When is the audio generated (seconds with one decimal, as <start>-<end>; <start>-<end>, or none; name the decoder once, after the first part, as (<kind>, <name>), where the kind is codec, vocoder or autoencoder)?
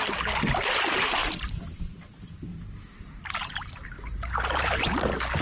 1.2-2.1 (vocoder, BigVGAN v2); 2.5-5.0